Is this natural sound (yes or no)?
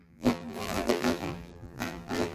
no